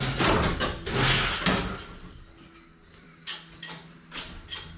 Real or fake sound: real